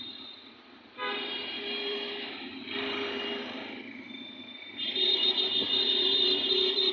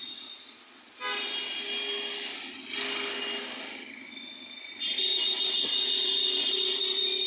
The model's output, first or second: first